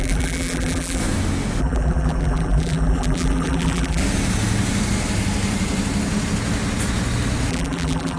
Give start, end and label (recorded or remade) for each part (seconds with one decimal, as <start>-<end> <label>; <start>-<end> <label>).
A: 0.0-1.0 remade; 1.0-1.6 recorded; 1.6-4.0 remade; 4.0-7.5 recorded; 7.5-8.2 remade